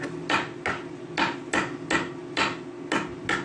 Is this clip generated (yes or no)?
no